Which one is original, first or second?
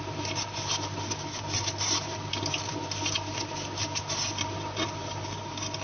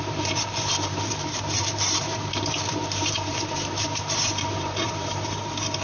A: first